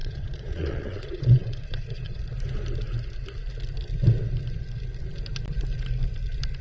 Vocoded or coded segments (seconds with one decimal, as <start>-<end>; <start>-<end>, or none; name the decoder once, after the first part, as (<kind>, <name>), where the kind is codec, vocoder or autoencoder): 0.0-2.2 (vocoder, Vocos)